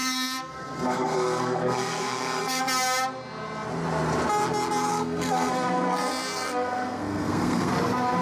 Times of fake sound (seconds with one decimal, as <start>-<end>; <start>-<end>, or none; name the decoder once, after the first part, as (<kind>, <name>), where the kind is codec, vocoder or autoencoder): 0.0-2.6 (codec, SNAC); 4.9-7.7